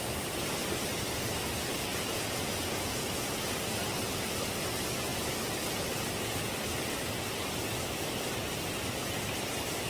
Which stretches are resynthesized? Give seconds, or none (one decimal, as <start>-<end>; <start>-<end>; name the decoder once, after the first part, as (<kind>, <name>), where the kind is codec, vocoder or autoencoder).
1.9-3.1 (vocoder, Vocos)